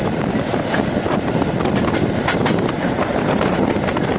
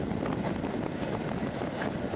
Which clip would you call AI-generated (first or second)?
first